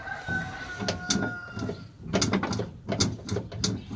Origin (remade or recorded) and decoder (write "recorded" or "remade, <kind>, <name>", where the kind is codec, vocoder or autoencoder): recorded